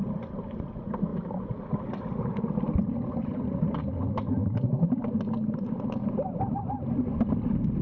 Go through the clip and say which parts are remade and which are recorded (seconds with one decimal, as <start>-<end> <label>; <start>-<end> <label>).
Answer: 0.0-7.8 recorded